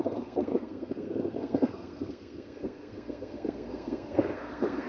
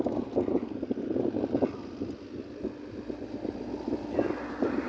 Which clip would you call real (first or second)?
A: second